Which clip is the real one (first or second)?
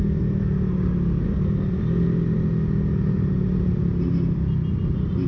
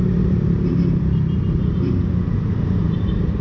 first